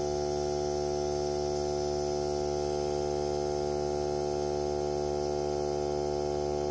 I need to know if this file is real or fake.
real